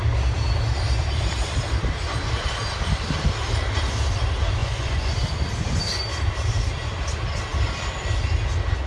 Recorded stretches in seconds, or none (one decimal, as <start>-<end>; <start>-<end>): 0.0-4.6; 5.1-8.9